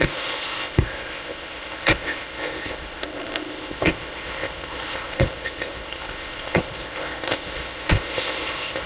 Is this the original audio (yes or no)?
no